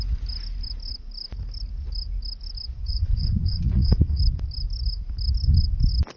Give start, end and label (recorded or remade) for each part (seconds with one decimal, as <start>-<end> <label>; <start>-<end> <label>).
0.0-2.8 recorded; 2.8-4.2 remade; 4.2-6.2 recorded